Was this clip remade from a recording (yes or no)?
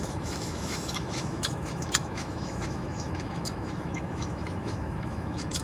yes